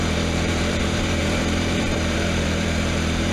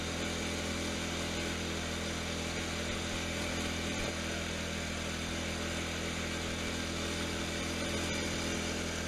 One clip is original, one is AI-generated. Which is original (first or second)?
second